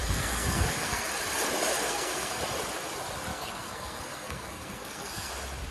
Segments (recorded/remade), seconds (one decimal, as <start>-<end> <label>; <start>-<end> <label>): 0.0-1.1 remade; 1.1-1.7 recorded; 1.7-2.4 remade; 2.4-3.3 recorded; 3.3-5.3 remade; 5.3-5.7 recorded